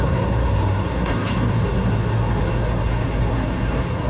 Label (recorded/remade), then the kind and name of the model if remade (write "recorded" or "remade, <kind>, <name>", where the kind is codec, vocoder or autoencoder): remade, codec, SNAC